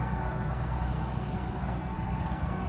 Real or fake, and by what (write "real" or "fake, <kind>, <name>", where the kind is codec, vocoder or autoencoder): fake, codec, SNAC